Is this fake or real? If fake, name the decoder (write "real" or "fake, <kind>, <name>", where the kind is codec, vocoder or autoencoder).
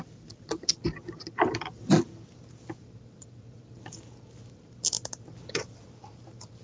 real